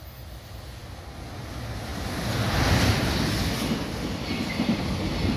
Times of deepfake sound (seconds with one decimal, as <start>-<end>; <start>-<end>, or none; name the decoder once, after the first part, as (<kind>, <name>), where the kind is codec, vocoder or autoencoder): none

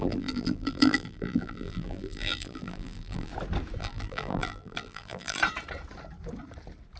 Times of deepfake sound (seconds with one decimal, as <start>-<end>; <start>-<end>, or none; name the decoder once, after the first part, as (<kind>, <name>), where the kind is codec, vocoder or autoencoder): 0.0-3.3 (vocoder, BigVGAN v2); 3.8-5.4